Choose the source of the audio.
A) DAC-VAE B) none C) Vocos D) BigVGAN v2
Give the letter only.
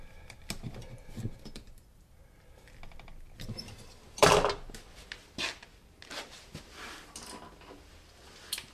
B